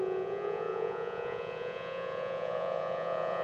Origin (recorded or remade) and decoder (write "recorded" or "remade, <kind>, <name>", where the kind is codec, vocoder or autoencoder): remade, vocoder, Vocos